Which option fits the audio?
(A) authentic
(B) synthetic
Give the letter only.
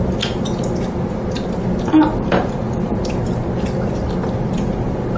A